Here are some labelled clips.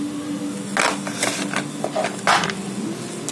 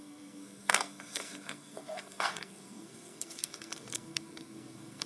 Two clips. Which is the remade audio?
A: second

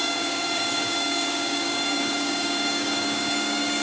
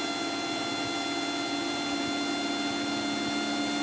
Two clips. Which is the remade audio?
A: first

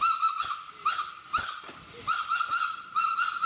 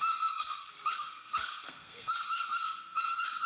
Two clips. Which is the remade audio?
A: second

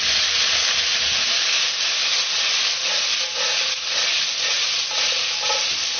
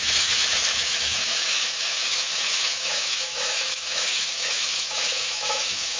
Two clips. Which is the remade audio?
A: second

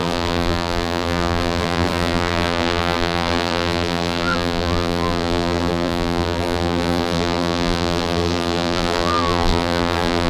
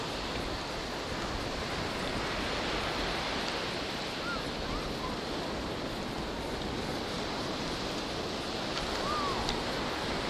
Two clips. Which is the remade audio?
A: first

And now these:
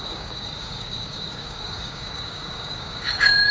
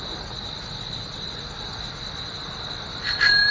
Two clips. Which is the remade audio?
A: first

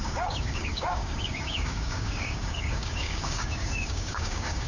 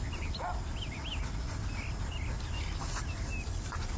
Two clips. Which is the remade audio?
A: first